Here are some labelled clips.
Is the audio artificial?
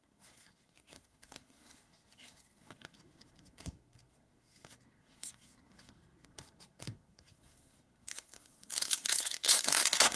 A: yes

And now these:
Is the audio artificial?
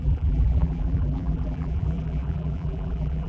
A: yes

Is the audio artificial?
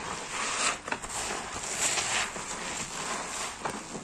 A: no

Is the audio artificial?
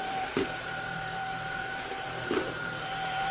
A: yes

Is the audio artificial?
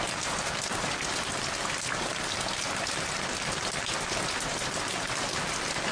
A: no